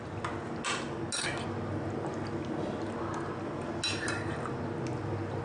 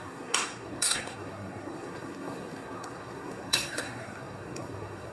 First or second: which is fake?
second